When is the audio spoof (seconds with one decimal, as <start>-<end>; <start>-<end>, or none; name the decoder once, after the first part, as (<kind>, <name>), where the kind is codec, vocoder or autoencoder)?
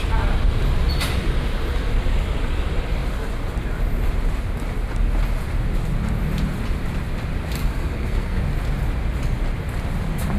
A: 7.6-8.4 (codec, SNAC)